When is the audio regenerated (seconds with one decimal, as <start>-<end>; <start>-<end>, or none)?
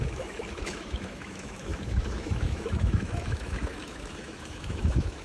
0.0-5.2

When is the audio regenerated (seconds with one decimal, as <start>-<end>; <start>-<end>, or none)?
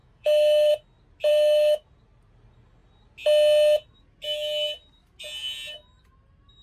0.0-0.7; 1.3-1.8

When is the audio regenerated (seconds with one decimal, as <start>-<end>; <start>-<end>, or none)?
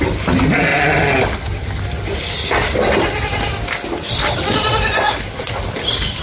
none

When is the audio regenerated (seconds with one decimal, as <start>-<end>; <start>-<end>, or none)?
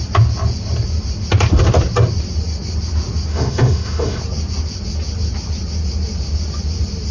3.3-4.2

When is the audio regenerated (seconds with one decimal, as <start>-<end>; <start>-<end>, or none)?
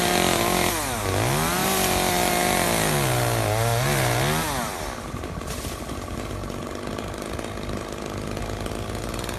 none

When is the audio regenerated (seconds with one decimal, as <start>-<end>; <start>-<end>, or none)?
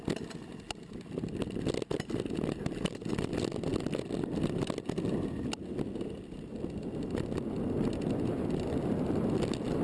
none